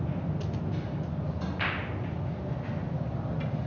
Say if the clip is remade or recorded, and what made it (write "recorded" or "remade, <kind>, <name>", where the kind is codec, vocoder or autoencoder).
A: recorded